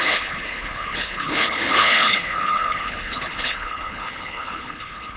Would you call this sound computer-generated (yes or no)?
yes